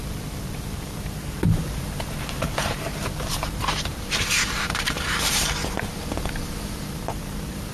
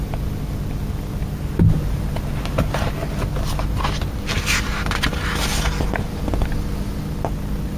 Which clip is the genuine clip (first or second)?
second